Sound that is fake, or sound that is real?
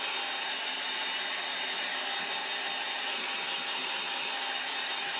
real